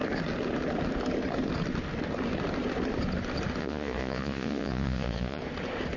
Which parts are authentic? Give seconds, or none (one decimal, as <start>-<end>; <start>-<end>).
0.0-3.6; 5.4-6.0